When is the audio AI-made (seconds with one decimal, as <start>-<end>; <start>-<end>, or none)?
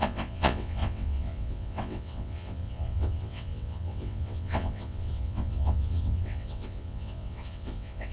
0.0-8.1